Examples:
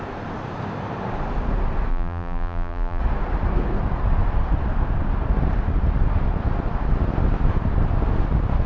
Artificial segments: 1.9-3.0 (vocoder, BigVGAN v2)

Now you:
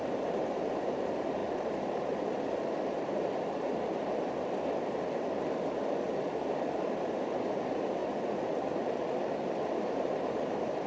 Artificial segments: 0.0-1.4 (vocoder, BigVGAN v2); 6.6-8.0; 9.9-10.9

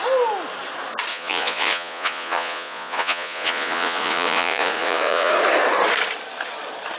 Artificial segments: 1.1-5.3 (vocoder, Vocos)

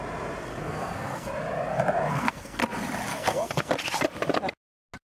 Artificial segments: 0.5-1.3 (codec, SNAC); 2.1-2.6; 3.1-3.7